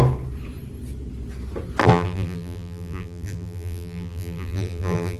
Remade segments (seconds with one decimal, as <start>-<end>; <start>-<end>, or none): 1.8-5.2